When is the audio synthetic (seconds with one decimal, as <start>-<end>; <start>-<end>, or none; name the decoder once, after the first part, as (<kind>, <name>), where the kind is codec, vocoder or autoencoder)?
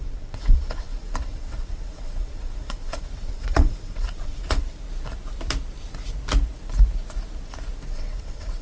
0.0-4.6 (vocoder, WaveNeXt); 7.9-8.6